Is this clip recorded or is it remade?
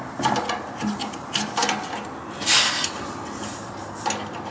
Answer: recorded